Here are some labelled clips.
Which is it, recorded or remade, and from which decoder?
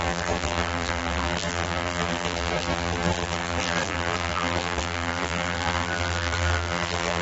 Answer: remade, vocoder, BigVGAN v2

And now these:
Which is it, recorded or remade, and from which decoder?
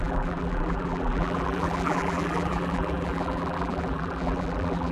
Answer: remade, vocoder, BigVGAN v2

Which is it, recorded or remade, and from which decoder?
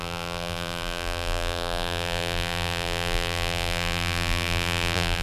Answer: remade, vocoder, BigVGAN v2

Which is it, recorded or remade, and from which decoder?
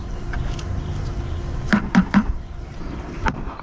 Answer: remade, vocoder, BigVGAN v2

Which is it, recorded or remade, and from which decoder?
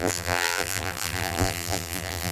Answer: remade, vocoder, BigVGAN v2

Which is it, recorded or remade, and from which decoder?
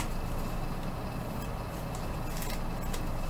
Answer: recorded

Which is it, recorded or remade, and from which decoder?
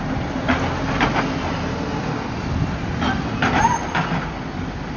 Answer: recorded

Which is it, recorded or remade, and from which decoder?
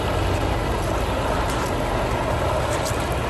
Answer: recorded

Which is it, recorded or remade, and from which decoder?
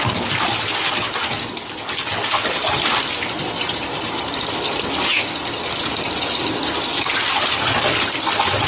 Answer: recorded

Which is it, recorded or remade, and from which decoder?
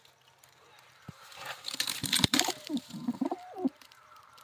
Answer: remade, vocoder, BigVGAN v2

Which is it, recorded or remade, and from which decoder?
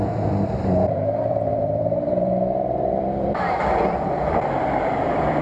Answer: remade, vocoder, BigVGAN v2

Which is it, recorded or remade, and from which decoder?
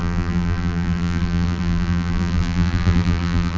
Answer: remade, vocoder, BigVGAN v2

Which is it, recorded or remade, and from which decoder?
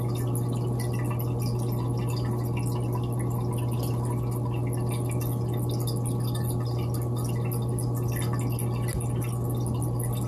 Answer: recorded